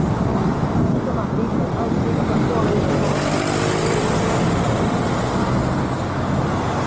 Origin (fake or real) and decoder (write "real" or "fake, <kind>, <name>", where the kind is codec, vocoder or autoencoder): real